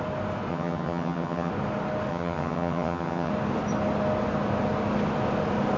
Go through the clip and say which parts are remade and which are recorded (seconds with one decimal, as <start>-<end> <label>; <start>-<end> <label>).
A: 0.0-0.5 recorded; 0.5-1.5 remade; 1.5-2.1 recorded; 2.1-3.3 remade; 3.3-5.8 recorded